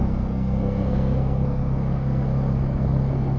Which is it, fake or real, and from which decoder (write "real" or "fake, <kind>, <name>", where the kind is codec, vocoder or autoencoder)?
fake, codec, SNAC